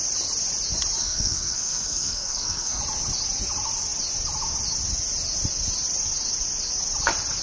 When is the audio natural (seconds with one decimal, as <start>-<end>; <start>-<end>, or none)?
0.0-1.0; 2.8-7.4